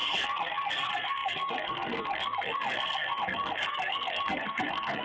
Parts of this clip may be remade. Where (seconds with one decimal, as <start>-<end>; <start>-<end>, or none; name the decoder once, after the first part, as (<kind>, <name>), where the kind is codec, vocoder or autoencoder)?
0.0-5.0 (codec, SNAC)